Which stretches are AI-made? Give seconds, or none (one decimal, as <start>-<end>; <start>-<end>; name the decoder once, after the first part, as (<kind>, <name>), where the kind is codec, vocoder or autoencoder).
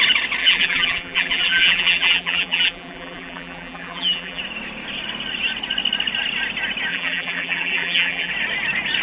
0.4-4.4 (vocoder, BigVGAN v2); 6.9-8.3